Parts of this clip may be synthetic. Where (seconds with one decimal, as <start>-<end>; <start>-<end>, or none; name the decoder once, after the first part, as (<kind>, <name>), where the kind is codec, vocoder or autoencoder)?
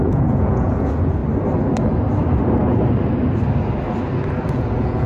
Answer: 0.0-1.2 (vocoder, Vocos); 4.3-5.1